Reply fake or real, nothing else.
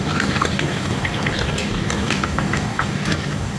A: fake